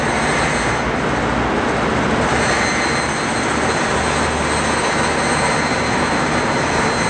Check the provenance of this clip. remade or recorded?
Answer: recorded